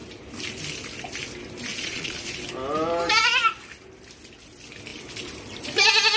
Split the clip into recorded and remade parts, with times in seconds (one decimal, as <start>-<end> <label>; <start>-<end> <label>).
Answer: 0.0-1.7 recorded; 1.7-2.3 remade; 2.3-6.2 recorded